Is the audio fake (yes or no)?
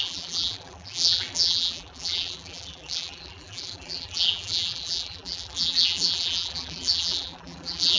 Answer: yes